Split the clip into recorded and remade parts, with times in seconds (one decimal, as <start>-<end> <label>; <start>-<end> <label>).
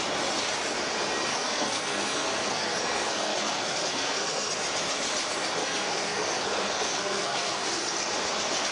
0.0-1.3 recorded; 1.3-4.5 remade; 4.5-5.6 recorded; 5.6-7.7 remade; 7.7-8.7 recorded